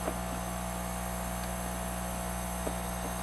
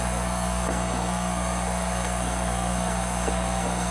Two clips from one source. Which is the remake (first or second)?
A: second